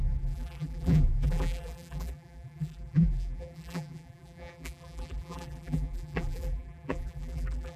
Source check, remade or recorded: remade